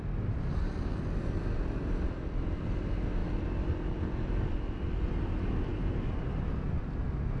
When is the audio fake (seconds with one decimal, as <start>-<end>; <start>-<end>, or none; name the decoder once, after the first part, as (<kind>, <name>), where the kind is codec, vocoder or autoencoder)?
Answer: none